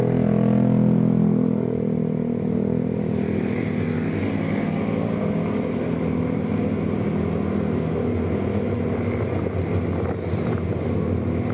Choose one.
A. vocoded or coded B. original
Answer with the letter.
B